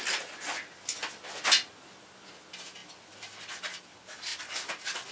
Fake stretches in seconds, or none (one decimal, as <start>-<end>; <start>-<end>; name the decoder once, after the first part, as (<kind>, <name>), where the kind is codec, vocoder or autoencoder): none